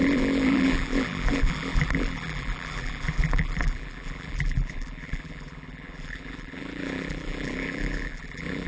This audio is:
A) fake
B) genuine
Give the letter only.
A